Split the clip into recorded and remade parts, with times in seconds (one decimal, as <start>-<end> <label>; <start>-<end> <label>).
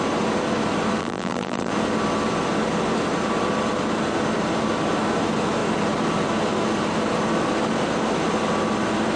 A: 0.0-1.0 recorded; 1.0-1.7 remade; 1.7-9.2 recorded